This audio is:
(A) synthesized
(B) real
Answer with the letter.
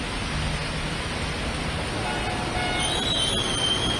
B